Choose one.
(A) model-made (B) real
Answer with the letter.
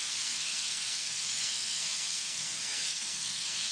A